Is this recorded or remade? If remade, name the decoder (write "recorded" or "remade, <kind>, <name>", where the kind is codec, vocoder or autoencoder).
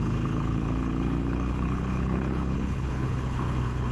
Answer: remade, codec, HILCodec